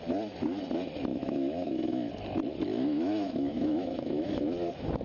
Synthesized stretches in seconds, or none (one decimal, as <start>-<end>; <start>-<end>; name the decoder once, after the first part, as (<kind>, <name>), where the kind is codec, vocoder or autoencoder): 1.1-2.1 (autoencoder, DAC-VAE); 2.7-4.4